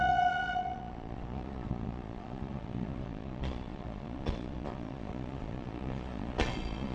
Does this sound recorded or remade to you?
remade